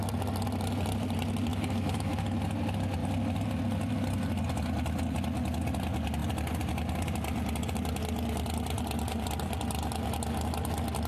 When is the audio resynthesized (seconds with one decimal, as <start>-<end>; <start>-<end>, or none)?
1.5-2.2